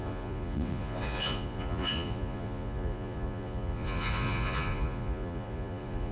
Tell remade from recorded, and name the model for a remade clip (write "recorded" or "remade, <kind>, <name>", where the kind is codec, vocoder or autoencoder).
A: remade, vocoder, Vocos